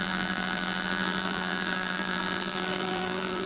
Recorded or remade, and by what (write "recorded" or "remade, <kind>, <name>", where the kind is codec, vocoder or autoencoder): remade, vocoder, BigVGAN v2